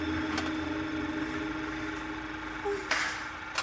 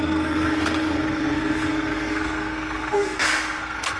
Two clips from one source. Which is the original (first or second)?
first